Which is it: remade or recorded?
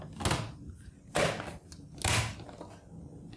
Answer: recorded